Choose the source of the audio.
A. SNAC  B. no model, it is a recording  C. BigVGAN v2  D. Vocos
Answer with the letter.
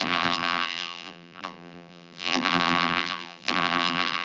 C